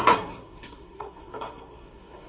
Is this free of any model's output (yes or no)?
no